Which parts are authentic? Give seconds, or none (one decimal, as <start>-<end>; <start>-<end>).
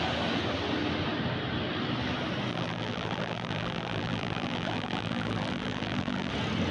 0.0-2.5; 6.3-6.7